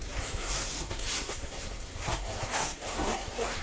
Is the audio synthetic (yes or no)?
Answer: yes